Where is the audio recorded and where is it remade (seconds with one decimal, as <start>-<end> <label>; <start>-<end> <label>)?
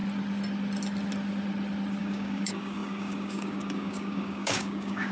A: 0.0-2.0 recorded; 2.0-5.1 remade